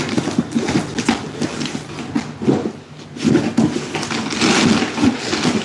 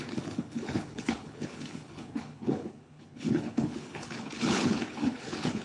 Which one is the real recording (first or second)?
first